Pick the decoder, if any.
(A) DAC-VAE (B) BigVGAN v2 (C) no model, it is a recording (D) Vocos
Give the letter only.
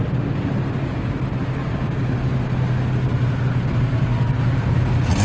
C